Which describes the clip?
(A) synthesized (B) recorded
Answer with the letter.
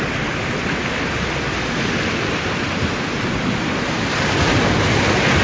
B